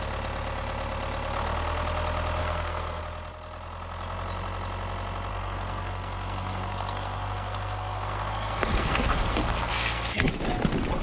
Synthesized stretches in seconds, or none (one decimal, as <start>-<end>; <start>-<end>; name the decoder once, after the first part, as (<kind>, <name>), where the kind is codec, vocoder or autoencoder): 2.4-3.0 (codec, SNAC); 5.3-10.3